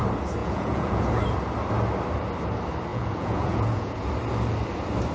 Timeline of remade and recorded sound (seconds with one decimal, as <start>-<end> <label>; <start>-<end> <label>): 0.0-0.4 recorded; 0.4-1.0 remade; 1.0-2.9 recorded; 2.9-4.1 remade; 4.1-5.1 recorded